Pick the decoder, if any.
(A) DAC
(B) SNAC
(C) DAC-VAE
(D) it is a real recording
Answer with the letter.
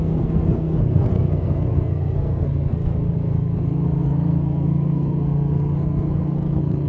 B